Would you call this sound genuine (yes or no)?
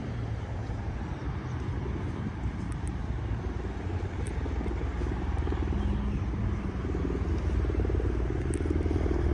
yes